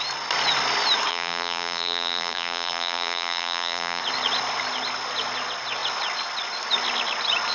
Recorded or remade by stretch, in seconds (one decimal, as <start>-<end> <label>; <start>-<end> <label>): 0.0-1.1 recorded; 1.1-4.0 remade; 4.0-7.5 recorded